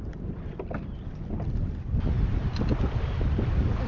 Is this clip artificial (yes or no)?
no